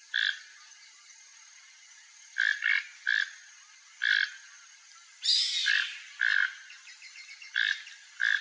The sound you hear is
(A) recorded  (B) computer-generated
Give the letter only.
A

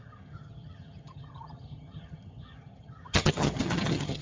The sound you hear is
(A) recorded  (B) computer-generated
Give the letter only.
B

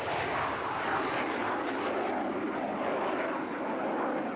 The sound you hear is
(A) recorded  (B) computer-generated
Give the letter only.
A